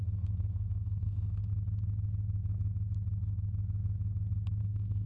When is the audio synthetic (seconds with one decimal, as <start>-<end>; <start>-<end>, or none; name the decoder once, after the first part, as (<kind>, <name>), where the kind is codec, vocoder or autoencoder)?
0.0-1.5 (codec, SNAC); 4.6-5.1